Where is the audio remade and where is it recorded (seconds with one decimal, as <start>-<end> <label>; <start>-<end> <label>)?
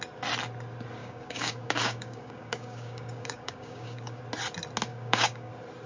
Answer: 0.0-1.0 recorded; 1.0-4.2 remade; 4.2-4.9 recorded; 4.9-5.5 remade; 5.5-5.9 recorded